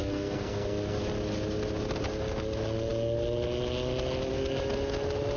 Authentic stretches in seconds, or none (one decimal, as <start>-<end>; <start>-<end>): 1.0-5.4